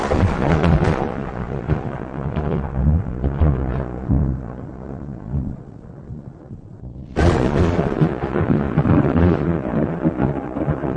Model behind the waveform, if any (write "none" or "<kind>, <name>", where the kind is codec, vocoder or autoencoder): vocoder, Vocos